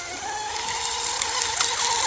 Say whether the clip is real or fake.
real